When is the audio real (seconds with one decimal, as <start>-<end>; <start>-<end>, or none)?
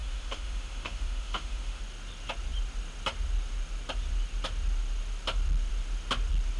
1.8-6.6